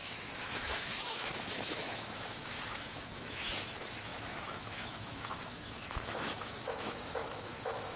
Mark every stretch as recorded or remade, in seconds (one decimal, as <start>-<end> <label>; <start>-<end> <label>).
0.0-8.0 remade